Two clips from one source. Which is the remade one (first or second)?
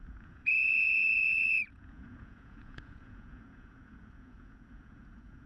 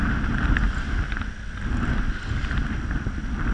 first